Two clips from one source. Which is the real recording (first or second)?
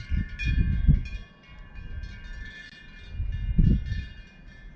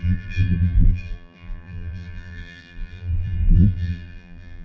first